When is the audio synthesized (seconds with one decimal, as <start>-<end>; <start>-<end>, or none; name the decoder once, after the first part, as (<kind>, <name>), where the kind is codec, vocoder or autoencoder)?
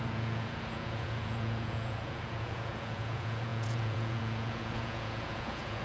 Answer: 0.0-5.8 (vocoder, Vocos)